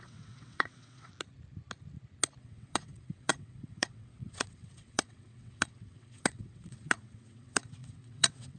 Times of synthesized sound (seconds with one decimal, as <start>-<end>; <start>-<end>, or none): 0.0-1.1; 2.4-8.6